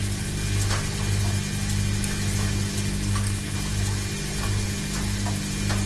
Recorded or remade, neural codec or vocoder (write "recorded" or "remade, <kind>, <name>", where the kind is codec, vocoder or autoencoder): recorded